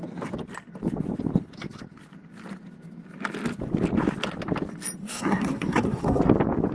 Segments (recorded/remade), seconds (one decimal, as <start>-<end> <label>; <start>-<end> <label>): 0.0-5.0 recorded; 5.0-6.2 remade; 6.2-6.7 recorded